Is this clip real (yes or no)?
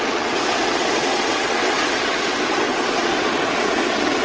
no